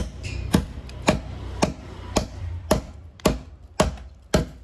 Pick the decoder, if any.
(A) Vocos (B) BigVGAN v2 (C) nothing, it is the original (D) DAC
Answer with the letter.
B